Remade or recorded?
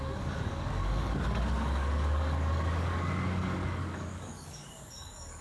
remade